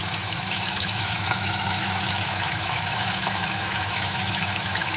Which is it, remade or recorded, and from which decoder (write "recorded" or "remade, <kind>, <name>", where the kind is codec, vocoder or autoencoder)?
remade, autoencoder, DAC-VAE